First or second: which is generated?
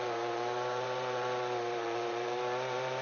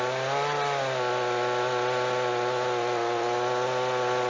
first